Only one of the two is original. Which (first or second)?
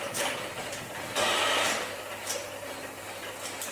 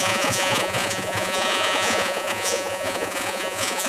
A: first